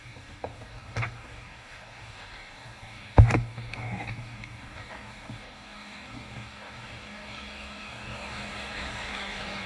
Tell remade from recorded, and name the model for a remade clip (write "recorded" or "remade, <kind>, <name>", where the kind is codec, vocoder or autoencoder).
remade, codec, DAC